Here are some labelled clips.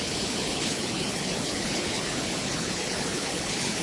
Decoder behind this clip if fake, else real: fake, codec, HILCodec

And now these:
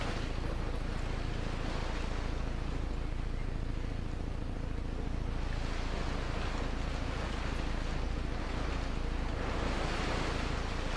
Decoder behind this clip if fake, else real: real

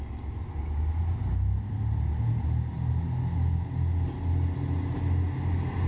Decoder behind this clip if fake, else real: real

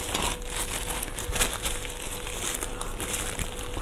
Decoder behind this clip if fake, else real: real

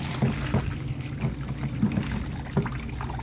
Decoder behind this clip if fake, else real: real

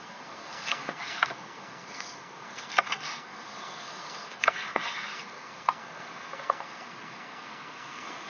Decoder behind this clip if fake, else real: fake, codec, SNAC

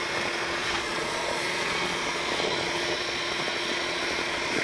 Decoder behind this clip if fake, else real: fake, vocoder, Vocos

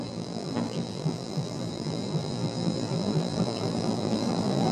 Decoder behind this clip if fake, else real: fake, vocoder, BigVGAN v2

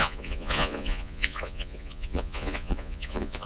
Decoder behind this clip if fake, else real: fake, vocoder, Vocos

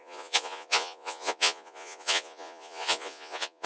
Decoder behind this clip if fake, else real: fake, vocoder, Vocos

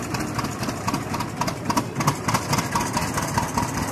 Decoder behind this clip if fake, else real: real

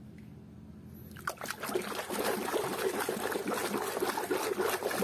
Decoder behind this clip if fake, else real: real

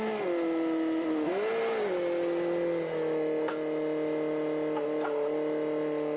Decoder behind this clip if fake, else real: real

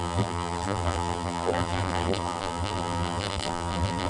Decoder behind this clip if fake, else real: fake, vocoder, BigVGAN v2